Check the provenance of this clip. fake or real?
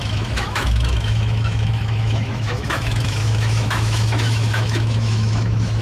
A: fake